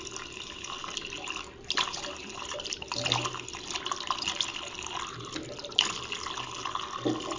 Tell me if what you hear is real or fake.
real